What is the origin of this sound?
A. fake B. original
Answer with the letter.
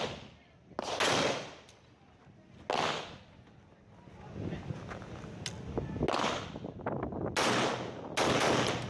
B